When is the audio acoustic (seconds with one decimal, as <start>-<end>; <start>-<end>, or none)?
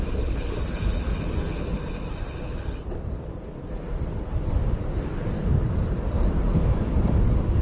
1.1-1.7